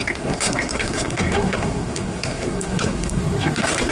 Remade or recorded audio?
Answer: remade